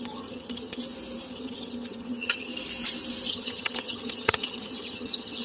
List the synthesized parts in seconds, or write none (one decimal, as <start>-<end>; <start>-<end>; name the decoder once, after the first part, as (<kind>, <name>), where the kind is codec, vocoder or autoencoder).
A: 0.0-0.8 (vocoder, HiFi-GAN); 1.3-2.5; 3.3-5.4